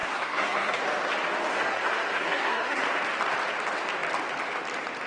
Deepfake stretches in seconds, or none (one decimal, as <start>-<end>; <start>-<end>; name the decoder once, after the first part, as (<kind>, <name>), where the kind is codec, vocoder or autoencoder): 0.0-0.8 (codec, SNAC); 1.5-2.8

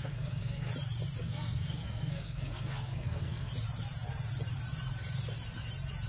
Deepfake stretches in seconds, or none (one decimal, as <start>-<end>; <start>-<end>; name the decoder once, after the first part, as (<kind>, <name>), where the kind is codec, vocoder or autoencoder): 0.0-0.7 (codec, SNAC); 1.2-3.5

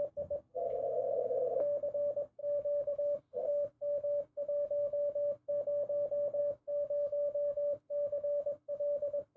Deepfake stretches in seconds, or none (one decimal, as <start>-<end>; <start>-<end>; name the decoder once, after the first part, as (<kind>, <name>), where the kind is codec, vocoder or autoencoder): 2.4-5.5 (autoencoder, DAC-VAE); 6.4-9.4

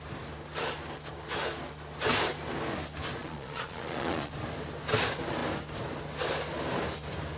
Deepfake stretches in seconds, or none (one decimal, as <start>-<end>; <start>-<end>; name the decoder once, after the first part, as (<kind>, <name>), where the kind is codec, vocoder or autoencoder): 3.2-4.3 (vocoder, Vocos)

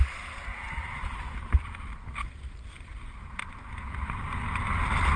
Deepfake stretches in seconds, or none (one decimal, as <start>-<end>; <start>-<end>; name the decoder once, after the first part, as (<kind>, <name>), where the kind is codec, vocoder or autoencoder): none

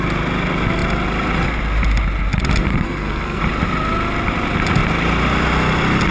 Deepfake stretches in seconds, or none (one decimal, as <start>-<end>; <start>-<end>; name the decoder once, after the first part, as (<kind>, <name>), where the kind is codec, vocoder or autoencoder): 2.7-3.4 (codec, SNAC)

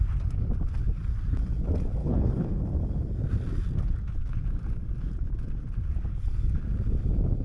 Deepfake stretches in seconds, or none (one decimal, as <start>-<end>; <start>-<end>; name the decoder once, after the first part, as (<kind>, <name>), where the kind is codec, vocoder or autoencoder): 2.0-2.6 (codec, HILCodec)

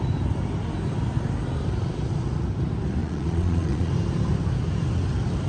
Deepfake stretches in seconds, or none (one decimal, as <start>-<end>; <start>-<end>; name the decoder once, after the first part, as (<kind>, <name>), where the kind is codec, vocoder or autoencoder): 3.0-3.9 (vocoder, Vocos)